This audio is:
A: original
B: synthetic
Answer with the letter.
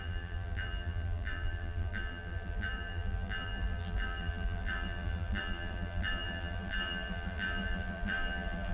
B